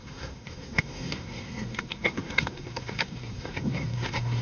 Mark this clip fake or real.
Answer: fake